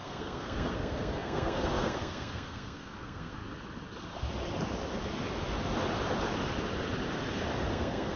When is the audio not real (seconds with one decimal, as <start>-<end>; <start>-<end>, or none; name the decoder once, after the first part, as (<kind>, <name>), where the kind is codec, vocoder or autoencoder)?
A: 0.0-3.4 (codec, SNAC); 7.7-8.2

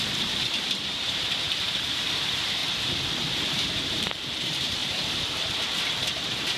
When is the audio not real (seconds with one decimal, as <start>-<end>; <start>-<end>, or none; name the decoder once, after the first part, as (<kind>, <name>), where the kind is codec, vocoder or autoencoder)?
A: 0.0-2.6 (vocoder, BigVGAN v2); 3.2-6.6

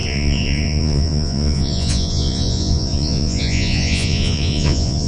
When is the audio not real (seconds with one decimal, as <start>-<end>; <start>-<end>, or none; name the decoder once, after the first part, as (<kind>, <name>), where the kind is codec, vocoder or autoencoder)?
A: 0.0-5.1 (vocoder, Vocos)

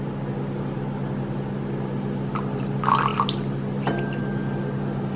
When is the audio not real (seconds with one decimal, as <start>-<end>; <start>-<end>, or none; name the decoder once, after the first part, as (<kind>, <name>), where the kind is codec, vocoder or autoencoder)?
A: none

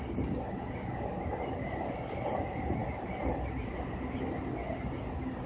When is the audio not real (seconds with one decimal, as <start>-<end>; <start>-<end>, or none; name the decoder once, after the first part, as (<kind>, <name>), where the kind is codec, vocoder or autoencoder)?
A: none

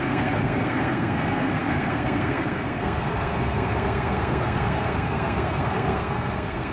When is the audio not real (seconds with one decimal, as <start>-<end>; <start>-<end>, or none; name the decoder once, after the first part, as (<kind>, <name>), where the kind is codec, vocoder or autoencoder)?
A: 0.0-6.7 (codec, SNAC)